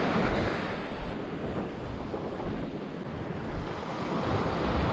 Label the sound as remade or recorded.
recorded